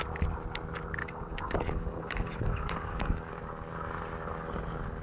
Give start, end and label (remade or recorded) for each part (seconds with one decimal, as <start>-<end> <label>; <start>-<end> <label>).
0.0-1.0 recorded; 1.0-3.3 remade; 3.3-5.0 recorded